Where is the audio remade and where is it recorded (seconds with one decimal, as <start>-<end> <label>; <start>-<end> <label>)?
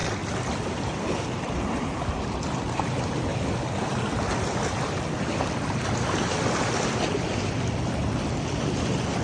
0.0-9.2 recorded